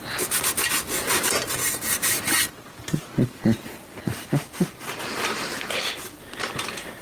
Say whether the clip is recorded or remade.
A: recorded